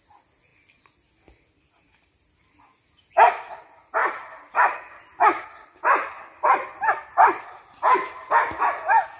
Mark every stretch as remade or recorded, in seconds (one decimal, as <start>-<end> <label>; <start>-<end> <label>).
0.0-9.2 recorded